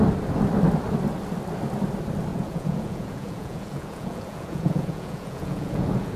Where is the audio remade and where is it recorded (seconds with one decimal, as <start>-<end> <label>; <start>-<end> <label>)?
0.0-2.3 recorded; 2.3-6.2 remade